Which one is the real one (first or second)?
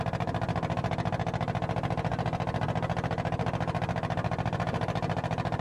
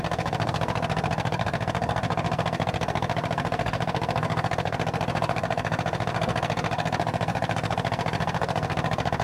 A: first